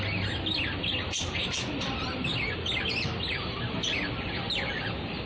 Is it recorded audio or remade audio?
recorded